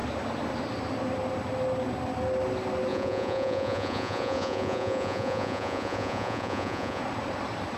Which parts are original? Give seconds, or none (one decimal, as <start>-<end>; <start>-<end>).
0.0-2.9; 7.0-7.8